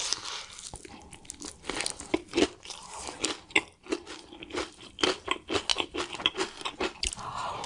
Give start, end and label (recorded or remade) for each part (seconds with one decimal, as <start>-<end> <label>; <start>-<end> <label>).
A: 0.0-7.7 recorded